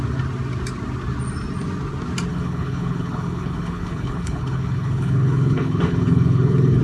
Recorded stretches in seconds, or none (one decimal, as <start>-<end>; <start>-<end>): 0.0-2.3